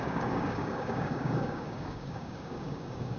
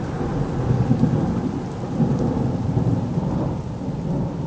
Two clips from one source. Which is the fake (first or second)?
first